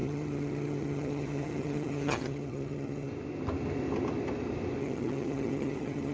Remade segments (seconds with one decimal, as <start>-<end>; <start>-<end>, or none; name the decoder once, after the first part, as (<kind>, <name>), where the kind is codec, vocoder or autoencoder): 0.0-3.1 (vocoder, HiFi-GAN); 4.8-6.1

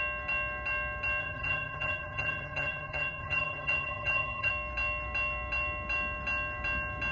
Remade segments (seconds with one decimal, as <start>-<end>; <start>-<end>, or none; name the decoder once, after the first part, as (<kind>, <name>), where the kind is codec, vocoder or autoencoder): 1.2-4.5 (vocoder, HiFi-GAN)

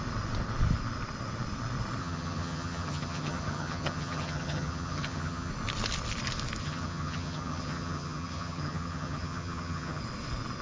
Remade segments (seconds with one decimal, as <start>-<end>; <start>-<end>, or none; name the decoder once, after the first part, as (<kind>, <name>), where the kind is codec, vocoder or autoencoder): 2.0-5.5 (vocoder, HiFi-GAN); 6.6-10.0

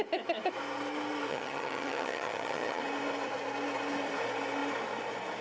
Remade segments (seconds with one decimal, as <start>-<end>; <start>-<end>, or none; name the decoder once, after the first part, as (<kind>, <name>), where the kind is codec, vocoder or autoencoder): 1.3-2.8 (vocoder, HiFi-GAN)